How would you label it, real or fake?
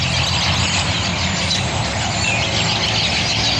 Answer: real